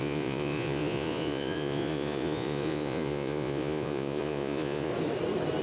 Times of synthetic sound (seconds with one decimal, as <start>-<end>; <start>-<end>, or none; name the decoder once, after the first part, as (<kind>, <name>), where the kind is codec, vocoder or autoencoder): 0.0-4.9 (vocoder, Vocos)